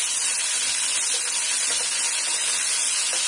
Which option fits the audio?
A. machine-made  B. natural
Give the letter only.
B